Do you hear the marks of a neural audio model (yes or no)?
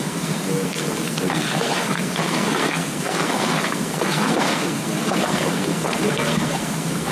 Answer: yes